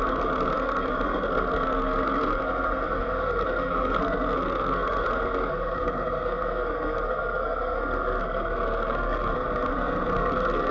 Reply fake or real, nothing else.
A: fake